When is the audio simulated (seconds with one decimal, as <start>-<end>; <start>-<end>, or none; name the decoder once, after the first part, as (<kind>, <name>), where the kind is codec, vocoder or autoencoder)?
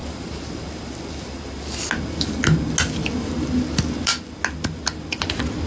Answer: none